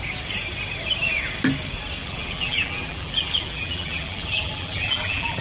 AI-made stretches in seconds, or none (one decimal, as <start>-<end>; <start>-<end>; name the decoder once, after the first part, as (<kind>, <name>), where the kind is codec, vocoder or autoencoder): 2.0-5.4 (vocoder, BigVGAN v2)